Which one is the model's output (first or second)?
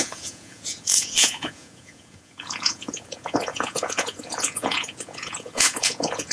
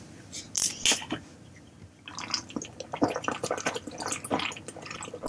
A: first